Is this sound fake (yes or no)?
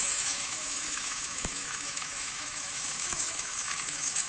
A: yes